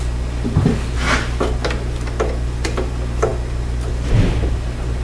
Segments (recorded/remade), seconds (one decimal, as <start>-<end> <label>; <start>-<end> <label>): 0.0-5.0 recorded